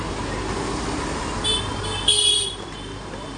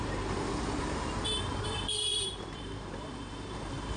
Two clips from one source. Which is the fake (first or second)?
second